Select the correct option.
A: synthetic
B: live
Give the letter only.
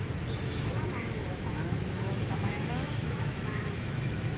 A